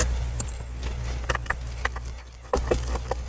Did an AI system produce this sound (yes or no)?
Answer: no